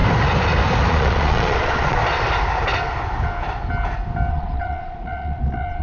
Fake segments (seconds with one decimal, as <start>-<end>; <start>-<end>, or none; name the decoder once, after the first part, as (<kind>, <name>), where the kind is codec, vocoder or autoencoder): 0.9-2.0 (vocoder, Vocos); 4.3-5.8